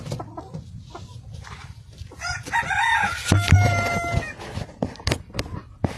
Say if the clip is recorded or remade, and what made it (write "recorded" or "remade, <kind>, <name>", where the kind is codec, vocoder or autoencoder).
recorded